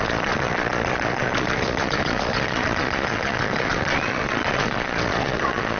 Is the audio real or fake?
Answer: fake